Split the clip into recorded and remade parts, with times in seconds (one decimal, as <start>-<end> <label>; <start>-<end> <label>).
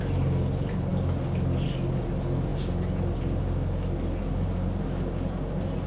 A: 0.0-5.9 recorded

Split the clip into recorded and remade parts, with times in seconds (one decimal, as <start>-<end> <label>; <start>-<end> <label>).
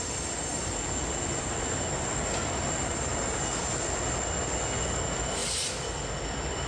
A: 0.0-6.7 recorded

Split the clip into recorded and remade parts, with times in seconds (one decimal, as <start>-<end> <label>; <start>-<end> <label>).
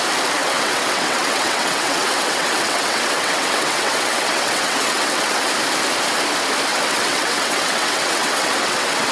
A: 0.0-0.4 recorded; 0.4-5.5 remade; 5.5-6.7 recorded; 6.7-9.1 remade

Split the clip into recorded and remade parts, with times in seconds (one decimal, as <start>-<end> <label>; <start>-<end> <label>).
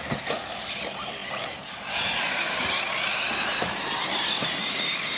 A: 0.0-5.2 recorded